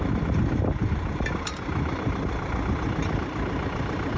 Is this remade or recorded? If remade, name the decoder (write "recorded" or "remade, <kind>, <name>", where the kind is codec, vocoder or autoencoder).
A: recorded